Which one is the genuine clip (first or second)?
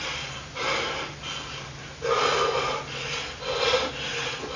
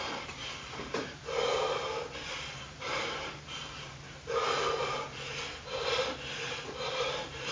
first